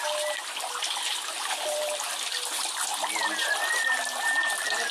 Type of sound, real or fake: real